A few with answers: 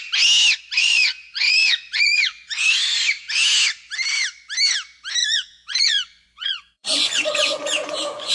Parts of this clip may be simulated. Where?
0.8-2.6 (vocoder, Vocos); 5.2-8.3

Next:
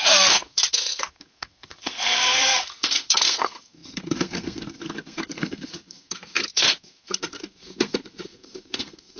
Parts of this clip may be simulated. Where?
0.0-9.2 (codec, SNAC)

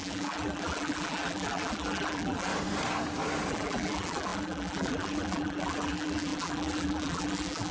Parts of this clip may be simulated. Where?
0.0-2.5 (vocoder, BigVGAN v2); 3.5-7.7

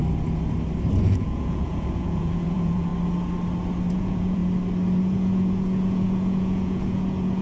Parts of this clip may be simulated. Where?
1.0-2.9 (vocoder, Vocos); 3.9-4.4; 5.0-7.4

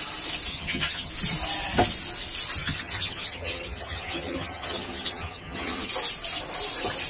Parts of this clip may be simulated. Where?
0.5-1.1 (vocoder, HiFi-GAN); 2.6-5.9

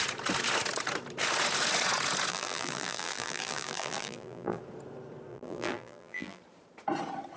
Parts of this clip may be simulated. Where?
2.3-4.6 (vocoder, BigVGAN v2); 5.3-6.4

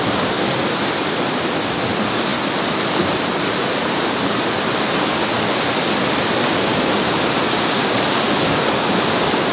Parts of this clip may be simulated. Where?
none